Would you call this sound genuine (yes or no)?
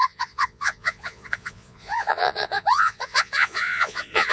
no